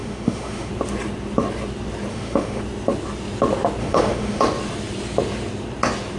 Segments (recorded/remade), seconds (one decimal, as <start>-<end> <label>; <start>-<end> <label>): 0.0-0.7 remade; 0.7-2.1 recorded; 2.1-2.6 remade; 2.6-3.8 recorded; 3.8-4.4 remade; 4.4-6.2 recorded